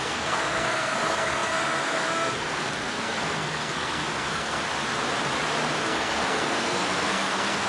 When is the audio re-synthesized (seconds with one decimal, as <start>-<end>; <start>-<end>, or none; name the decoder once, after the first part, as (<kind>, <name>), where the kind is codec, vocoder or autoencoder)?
0.0-4.6 (codec, SNAC); 5.8-7.7